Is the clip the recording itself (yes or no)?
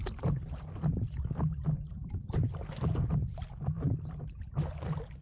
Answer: yes